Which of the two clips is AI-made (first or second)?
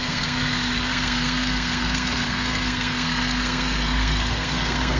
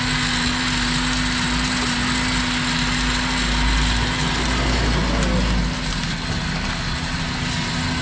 first